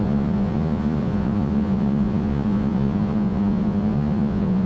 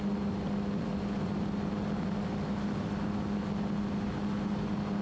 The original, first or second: second